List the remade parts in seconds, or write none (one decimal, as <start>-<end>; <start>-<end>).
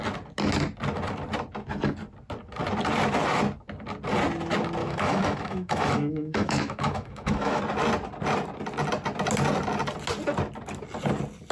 4.8-7.6